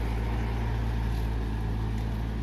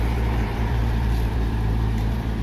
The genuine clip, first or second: first